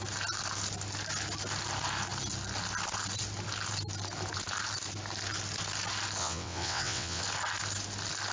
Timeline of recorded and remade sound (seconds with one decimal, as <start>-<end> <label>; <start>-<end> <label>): 0.0-6.2 recorded; 6.2-7.2 remade; 7.2-8.3 recorded